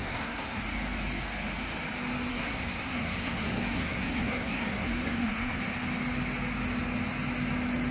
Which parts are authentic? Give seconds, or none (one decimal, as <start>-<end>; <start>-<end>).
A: 0.6-2.3; 5.6-7.9